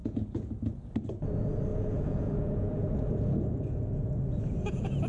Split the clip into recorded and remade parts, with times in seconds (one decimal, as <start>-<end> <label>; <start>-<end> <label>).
0.0-0.5 remade; 0.5-1.7 recorded; 1.7-5.1 remade